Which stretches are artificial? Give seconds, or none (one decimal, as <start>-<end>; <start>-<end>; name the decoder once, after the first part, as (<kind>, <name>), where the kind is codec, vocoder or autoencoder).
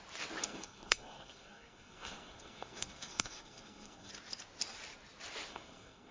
0.4-4.1 (codec, SNAC); 5.5-6.1